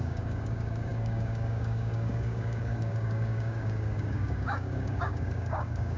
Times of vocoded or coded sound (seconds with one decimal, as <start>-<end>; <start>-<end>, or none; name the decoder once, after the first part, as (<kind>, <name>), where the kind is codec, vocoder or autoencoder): 0.0-6.0 (codec, DAC)